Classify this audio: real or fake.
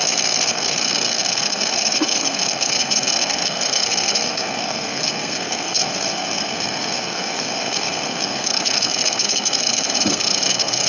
fake